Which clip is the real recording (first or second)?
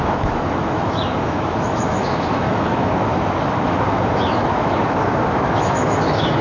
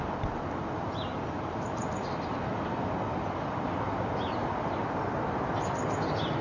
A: second